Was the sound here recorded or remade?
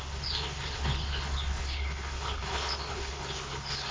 remade